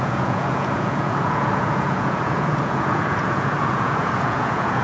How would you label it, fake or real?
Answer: fake